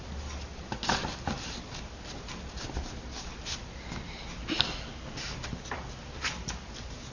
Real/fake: real